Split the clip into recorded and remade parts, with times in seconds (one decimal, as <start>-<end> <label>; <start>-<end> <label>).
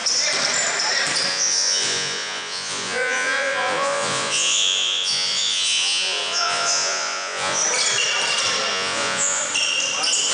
0.0-1.3 recorded; 1.3-7.6 remade; 7.6-8.7 recorded; 8.7-9.4 remade; 9.4-10.3 recorded